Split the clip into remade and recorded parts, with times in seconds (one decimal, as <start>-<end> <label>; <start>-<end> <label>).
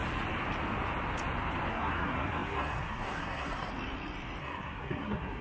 0.0-1.7 recorded; 1.7-3.7 remade; 3.7-4.4 recorded; 4.4-5.4 remade